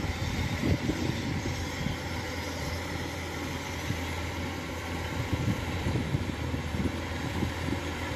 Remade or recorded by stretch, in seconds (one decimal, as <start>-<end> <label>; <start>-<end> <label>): 0.0-0.6 remade; 0.6-4.7 recorded; 4.7-8.2 remade